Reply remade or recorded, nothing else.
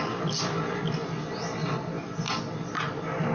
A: recorded